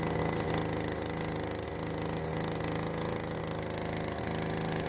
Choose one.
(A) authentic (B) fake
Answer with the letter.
A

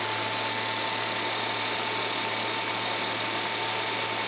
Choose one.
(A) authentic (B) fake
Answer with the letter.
A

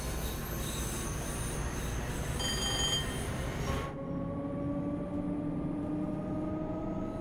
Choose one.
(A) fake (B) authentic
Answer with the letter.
B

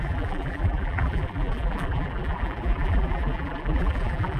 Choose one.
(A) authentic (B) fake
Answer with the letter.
B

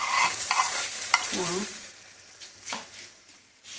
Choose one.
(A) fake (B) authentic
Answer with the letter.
A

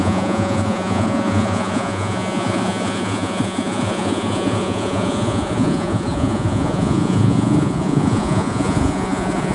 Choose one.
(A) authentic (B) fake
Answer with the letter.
B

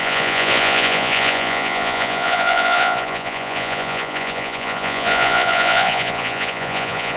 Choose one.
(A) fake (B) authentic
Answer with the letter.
A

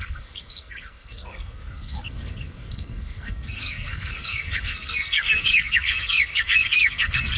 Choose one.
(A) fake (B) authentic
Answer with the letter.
A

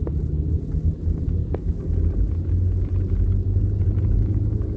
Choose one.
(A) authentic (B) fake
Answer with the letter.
A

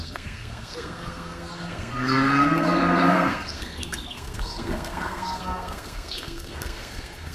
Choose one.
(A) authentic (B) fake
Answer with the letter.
B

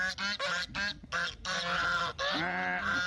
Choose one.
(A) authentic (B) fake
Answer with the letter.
A